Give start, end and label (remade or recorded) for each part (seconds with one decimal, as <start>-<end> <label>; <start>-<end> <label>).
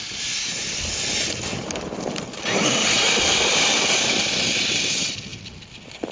0.0-6.1 recorded